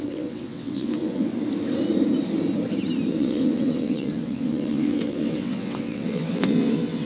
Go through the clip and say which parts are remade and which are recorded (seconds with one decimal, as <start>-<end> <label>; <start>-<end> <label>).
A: 0.0-1.3 remade; 1.3-3.1 recorded; 3.1-7.1 remade